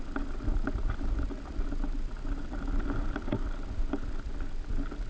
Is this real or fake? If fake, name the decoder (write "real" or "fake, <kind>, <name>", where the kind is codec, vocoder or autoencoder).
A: real